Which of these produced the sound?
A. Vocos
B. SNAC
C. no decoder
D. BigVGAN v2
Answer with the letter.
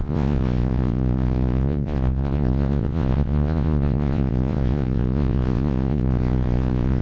A